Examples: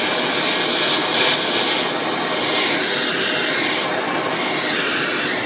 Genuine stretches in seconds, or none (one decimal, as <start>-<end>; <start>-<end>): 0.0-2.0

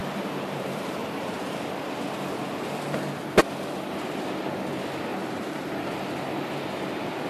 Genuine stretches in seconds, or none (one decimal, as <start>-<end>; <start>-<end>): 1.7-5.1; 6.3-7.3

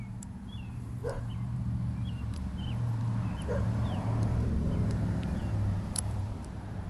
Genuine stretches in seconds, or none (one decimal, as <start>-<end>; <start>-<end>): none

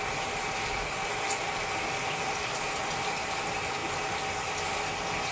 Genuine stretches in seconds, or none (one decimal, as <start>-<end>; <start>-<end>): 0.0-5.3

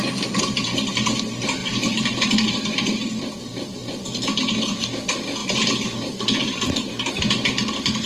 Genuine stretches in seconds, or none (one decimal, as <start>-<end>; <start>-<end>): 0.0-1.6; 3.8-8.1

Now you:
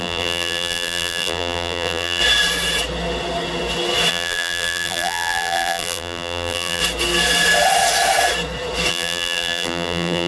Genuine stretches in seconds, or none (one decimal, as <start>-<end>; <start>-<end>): 2.2-4.1; 6.8-8.9

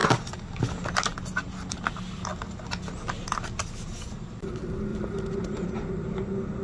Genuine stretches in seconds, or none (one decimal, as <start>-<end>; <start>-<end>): 0.0-1.1; 1.8-4.9; 5.9-6.6

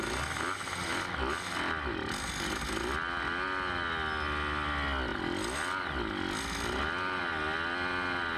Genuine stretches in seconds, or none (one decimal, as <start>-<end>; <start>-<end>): 0.0-8.4